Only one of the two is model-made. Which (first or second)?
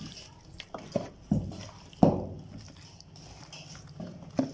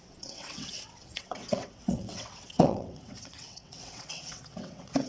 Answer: second